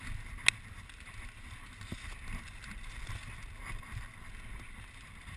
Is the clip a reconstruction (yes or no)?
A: no